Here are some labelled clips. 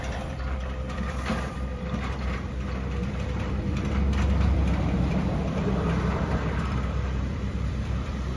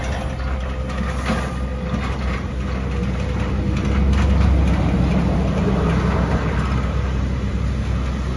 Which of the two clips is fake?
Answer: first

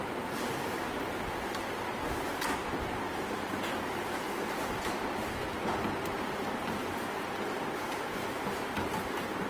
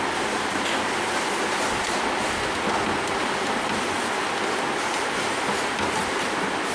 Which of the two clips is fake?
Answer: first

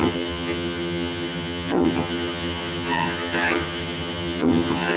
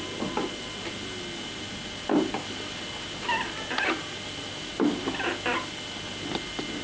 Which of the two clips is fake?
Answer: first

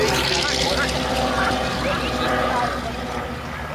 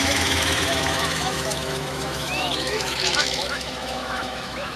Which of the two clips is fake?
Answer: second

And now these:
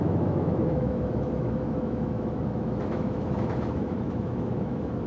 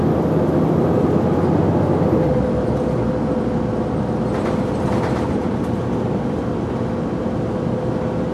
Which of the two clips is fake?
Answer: first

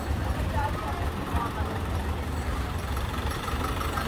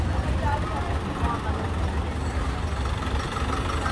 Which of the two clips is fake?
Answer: first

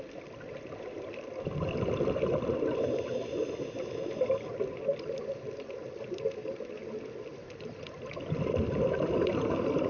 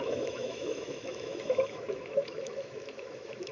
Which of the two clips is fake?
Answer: second